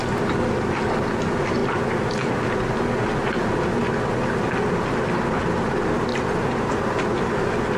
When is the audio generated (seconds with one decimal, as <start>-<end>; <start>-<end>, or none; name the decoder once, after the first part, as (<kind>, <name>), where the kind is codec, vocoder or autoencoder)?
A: 6.1-7.8 (vocoder, BigVGAN v2)